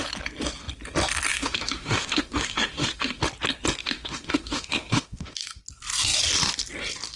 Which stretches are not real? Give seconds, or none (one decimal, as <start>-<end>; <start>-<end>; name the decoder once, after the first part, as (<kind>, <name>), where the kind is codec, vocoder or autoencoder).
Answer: 1.3-3.2 (autoencoder, DAC-VAE); 3.8-5.6